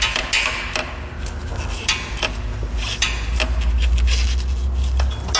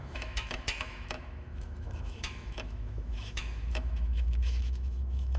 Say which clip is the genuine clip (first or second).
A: first